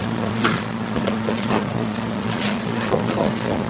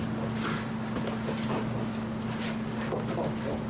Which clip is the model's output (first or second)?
first